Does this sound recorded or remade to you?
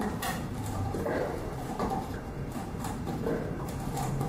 remade